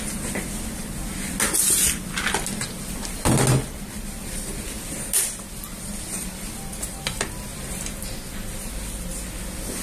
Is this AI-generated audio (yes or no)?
no